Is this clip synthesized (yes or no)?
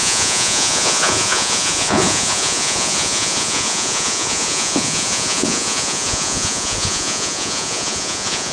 yes